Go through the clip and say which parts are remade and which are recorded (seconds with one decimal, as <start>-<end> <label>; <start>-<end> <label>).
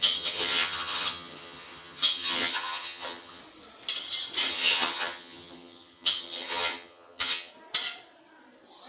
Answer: 0.0-3.4 remade; 3.4-4.5 recorded; 4.5-7.5 remade; 7.5-8.9 recorded